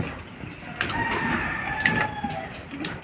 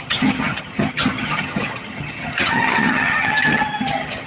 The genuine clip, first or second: first